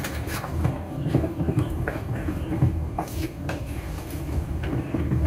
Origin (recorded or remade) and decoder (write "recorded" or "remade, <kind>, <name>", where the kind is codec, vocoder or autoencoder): remade, codec, DAC